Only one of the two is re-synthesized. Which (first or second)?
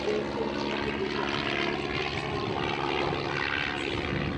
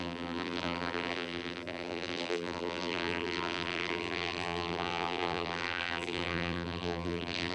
second